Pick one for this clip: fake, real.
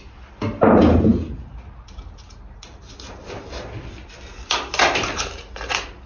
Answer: real